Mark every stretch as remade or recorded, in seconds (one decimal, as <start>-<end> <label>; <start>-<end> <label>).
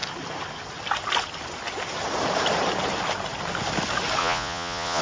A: 0.0-4.2 recorded; 4.2-5.0 remade